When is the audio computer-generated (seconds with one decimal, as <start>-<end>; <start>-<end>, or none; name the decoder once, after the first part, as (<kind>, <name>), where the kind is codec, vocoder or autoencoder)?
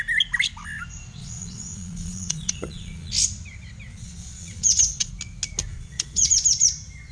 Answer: 1.2-3.1 (vocoder, Vocos); 3.9-5.1; 5.7-6.3